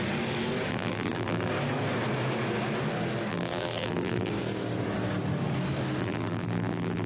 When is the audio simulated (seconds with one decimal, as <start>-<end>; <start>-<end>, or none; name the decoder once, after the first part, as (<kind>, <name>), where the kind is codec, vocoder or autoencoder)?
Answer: 0.7-1.5 (vocoder, BigVGAN v2); 3.3-4.3; 6.0-7.1